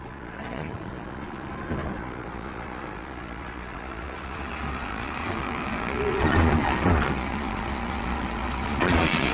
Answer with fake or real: fake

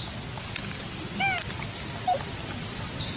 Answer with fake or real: real